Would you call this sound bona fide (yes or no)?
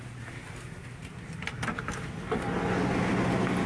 yes